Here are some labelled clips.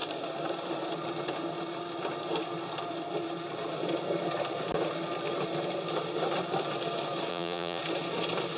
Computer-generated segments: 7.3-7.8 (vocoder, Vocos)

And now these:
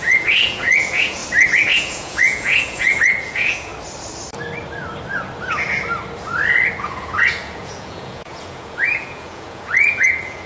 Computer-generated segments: 0.0-1.2 (vocoder, Vocos); 1.7-3.7; 6.8-10.5

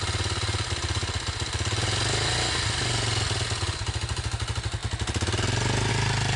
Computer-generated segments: none

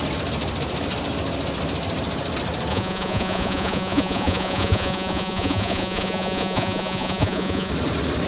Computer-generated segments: 2.7-7.7 (vocoder, Vocos)

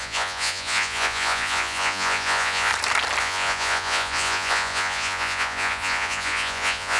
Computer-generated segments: 0.0-2.7 (vocoder, Vocos); 3.2-7.0

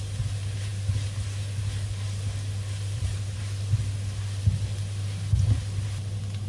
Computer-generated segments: none